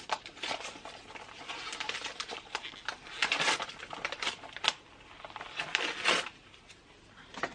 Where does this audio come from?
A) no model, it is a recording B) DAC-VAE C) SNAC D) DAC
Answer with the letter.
A